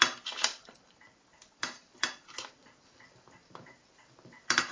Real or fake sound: fake